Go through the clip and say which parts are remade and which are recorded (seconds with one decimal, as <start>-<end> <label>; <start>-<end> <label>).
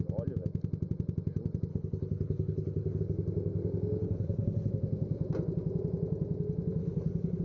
0.0-1.7 recorded; 1.7-3.0 remade; 3.0-4.0 recorded; 4.0-4.7 remade; 4.7-6.8 recorded; 6.8-7.4 remade